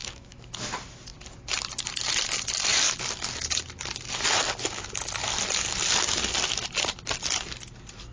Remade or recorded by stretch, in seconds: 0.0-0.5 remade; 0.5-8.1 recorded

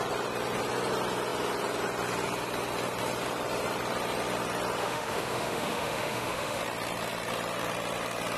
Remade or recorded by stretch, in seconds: 0.0-4.8 recorded; 4.8-6.6 remade; 6.6-8.4 recorded

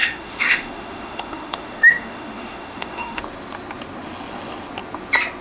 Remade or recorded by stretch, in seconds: 0.0-3.2 remade; 3.2-5.4 recorded